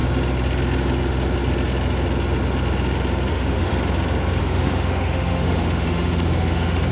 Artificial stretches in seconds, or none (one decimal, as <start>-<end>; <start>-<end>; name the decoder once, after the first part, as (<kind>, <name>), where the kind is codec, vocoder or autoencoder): 3.3-3.7 (autoencoder, DAC-VAE); 4.4-6.9